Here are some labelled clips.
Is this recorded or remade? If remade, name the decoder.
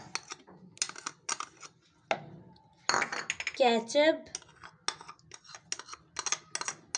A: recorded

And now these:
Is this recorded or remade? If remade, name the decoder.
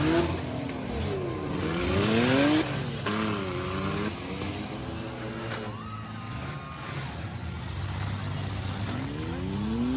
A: recorded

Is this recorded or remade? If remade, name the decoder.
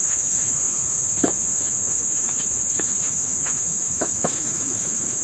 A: remade, autoencoder, DAC-VAE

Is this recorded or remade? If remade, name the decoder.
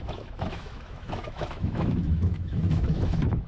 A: remade, autoencoder, DAC-VAE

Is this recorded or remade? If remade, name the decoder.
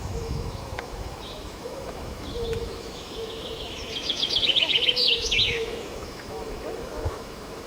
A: remade, autoencoder, DAC-VAE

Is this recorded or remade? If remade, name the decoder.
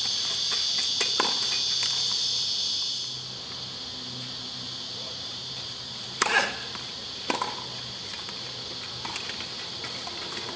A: recorded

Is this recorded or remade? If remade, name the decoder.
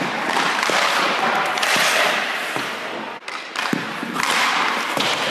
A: recorded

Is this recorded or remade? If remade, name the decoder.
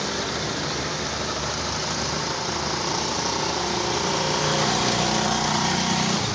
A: recorded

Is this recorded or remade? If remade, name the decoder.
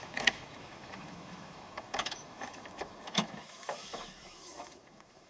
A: remade, autoencoder, DAC-VAE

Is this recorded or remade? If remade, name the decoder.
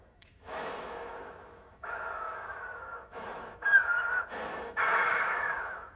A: remade, autoencoder, DAC-VAE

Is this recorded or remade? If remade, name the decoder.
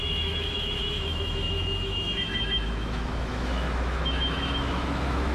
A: remade, autoencoder, DAC-VAE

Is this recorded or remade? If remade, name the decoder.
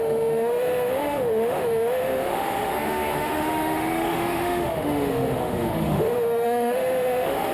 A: remade, autoencoder, DAC-VAE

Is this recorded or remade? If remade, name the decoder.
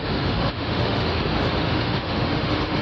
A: remade, autoencoder, DAC-VAE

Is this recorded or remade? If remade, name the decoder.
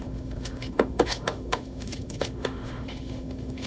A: remade, autoencoder, DAC-VAE